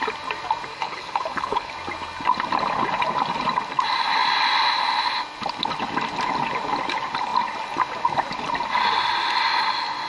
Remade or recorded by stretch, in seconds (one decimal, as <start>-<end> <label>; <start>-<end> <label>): 0.0-0.7 recorded; 0.7-1.7 remade; 1.7-10.1 recorded